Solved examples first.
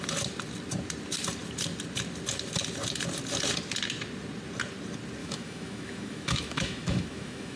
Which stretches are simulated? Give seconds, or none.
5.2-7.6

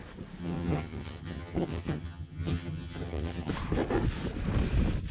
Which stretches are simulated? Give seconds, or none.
0.4-3.5